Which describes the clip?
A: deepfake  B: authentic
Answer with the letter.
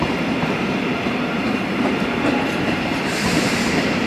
A